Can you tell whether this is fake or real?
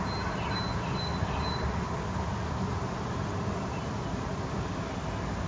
real